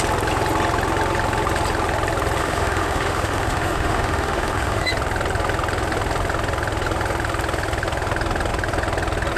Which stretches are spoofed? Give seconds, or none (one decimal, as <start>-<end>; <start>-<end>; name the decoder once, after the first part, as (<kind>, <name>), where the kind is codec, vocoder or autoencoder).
2.4-4.9 (autoencoder, DAC-VAE)